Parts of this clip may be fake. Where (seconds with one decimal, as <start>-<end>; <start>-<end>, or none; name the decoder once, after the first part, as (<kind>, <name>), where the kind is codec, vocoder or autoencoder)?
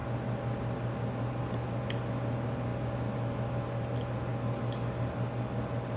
none